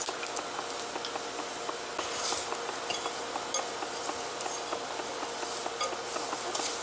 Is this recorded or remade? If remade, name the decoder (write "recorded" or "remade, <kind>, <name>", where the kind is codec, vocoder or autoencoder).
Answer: recorded